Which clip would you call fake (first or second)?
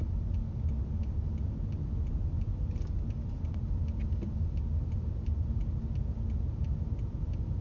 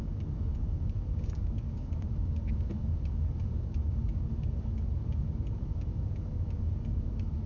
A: second